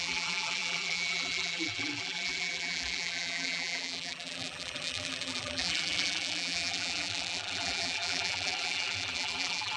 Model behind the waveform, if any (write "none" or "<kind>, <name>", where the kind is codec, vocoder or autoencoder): vocoder, BigVGAN v2